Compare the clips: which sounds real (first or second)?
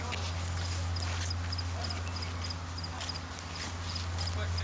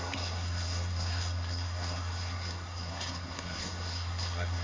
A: first